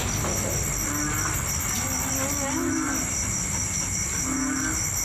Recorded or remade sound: recorded